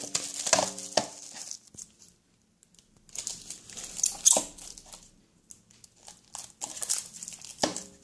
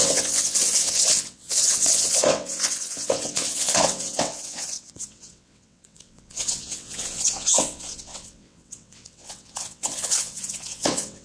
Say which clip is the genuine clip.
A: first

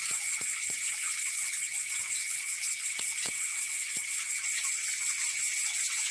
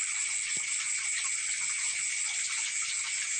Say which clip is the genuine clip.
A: second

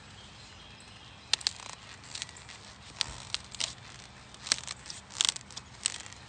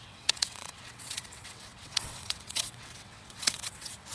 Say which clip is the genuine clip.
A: first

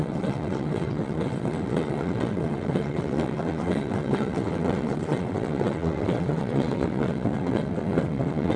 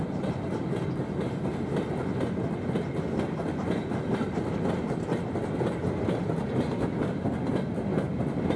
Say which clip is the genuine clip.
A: second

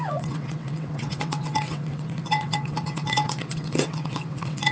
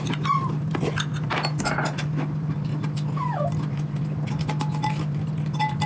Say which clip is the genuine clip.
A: second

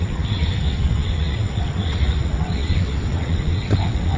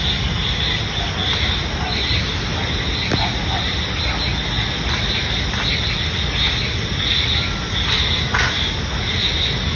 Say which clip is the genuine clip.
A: second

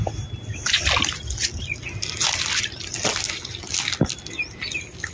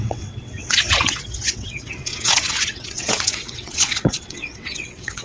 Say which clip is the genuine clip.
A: first